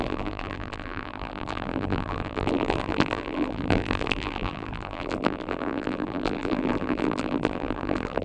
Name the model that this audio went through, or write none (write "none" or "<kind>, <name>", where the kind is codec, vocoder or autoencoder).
vocoder, BigVGAN v2